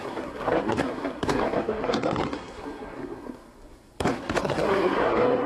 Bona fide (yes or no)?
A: no